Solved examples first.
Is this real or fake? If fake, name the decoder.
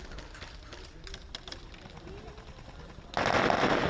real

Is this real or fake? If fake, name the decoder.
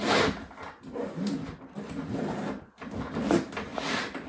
real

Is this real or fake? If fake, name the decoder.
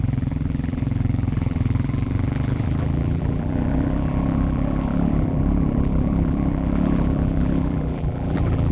fake, vocoder, BigVGAN v2